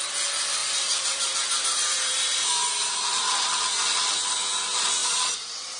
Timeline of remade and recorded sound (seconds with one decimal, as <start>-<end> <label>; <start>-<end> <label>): 0.0-0.6 recorded; 0.6-3.5 remade; 3.5-5.0 recorded; 5.0-5.8 remade